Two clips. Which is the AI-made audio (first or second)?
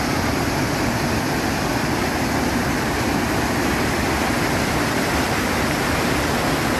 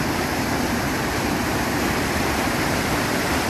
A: second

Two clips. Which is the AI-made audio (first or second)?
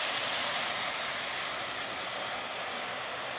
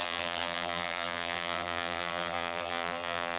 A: second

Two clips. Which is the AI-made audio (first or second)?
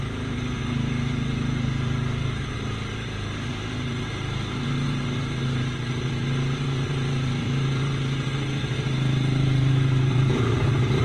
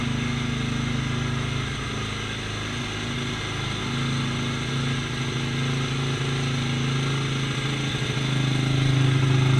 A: first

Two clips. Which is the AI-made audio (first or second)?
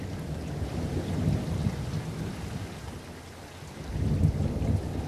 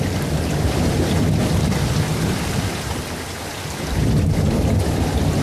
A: second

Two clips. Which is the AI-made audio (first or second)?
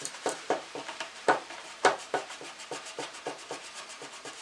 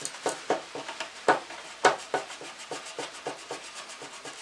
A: first